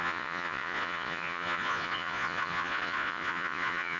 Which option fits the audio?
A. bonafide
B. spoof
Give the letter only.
B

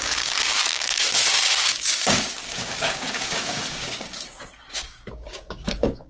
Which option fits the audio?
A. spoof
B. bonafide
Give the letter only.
A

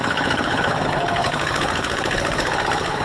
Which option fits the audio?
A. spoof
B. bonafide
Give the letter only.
A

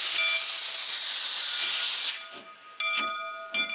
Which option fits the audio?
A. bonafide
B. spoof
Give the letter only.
A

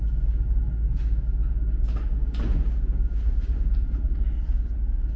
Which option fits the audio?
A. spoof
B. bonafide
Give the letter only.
B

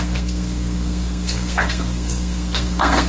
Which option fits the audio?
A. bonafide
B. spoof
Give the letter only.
B